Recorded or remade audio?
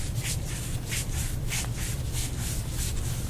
recorded